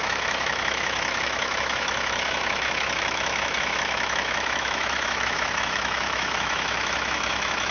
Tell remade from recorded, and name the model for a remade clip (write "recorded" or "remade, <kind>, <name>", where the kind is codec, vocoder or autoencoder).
remade, autoencoder, DAC-VAE